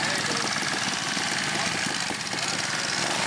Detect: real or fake real